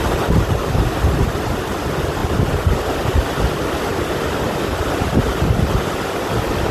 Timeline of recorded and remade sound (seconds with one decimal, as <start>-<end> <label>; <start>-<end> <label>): 0.0-6.7 recorded